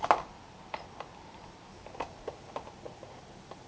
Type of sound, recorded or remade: recorded